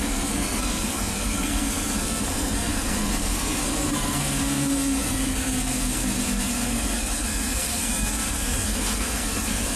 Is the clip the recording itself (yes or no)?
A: no